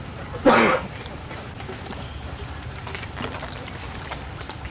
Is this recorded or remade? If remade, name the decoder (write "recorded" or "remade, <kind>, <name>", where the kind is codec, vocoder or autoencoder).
recorded